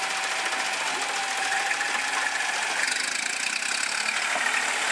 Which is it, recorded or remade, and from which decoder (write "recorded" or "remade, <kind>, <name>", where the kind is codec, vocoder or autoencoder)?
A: recorded